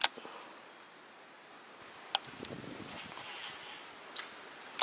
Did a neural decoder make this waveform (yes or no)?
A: no